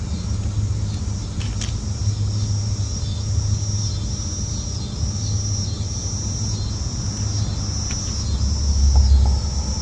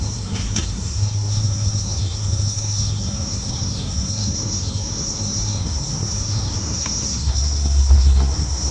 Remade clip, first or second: second